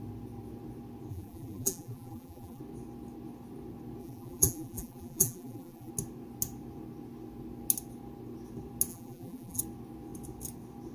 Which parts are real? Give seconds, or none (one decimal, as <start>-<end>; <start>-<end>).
0.0-1.1; 2.6-4.0; 5.9-8.9; 9.6-10.9